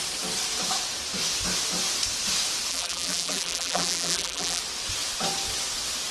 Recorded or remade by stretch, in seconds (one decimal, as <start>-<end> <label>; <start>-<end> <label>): 0.0-2.7 recorded; 2.7-4.6 remade; 4.6-6.1 recorded